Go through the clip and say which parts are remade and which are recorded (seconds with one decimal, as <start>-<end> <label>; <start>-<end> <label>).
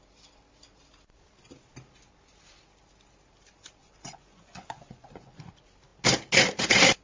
0.0-3.8 recorded; 3.8-5.5 remade; 5.5-7.0 recorded